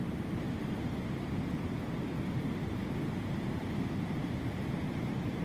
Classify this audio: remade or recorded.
recorded